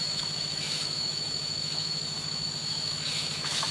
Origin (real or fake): fake